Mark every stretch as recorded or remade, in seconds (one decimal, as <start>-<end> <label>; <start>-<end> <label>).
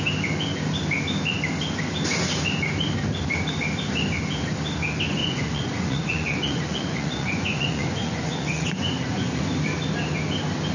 0.0-5.2 recorded; 5.2-9.4 remade; 9.4-10.7 recorded